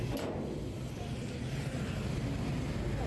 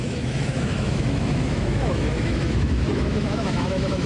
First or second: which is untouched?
first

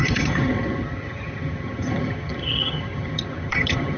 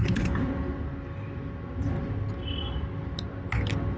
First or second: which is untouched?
second